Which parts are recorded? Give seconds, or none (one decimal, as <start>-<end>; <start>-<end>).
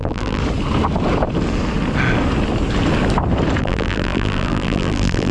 0.4-3.6